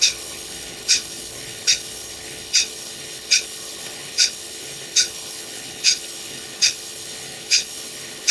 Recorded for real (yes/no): no